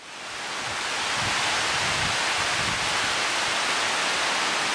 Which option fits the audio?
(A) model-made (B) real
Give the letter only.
B